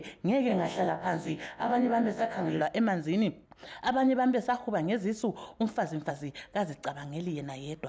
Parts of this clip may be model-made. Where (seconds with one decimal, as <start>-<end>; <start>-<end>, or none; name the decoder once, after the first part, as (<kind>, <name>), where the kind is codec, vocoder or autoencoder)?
0.5-2.6 (vocoder, WaveNeXt)

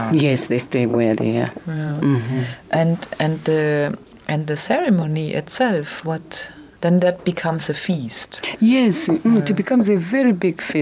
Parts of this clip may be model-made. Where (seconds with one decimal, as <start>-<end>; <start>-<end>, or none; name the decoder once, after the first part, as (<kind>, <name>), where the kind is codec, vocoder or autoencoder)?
0.9-2.4 (vocoder, BigVGAN v2); 4.0-8.4

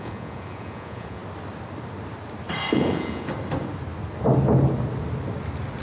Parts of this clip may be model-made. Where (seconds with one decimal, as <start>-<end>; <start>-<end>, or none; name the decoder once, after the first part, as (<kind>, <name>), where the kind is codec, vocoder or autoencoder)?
0.0-1.2 (vocoder, Vocos); 2.7-3.3

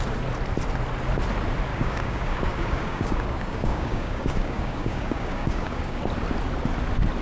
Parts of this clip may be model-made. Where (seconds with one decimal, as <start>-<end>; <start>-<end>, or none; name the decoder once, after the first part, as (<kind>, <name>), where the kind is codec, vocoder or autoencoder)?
1.7-6.0 (codec, DAC)

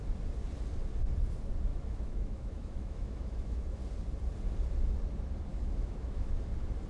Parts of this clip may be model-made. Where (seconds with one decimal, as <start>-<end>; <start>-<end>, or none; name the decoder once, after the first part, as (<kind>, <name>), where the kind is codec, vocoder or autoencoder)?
1.7-3.8 (autoencoder, DAC-VAE); 5.5-6.4

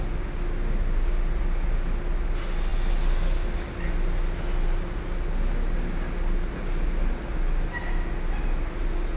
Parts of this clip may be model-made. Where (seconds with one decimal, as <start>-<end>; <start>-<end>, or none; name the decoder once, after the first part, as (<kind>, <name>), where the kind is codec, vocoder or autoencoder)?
none

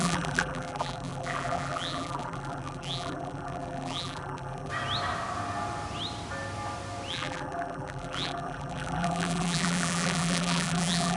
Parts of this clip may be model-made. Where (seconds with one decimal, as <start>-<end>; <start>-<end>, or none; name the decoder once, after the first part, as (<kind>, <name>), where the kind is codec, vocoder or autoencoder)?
0.0-4.7 (vocoder, BigVGAN v2); 7.1-11.2

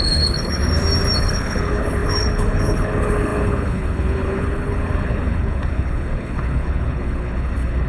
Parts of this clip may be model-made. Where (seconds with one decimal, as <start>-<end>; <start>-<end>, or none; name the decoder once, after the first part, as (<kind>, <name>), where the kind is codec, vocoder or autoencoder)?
0.0-0.6 (codec, HILCodec); 1.2-7.9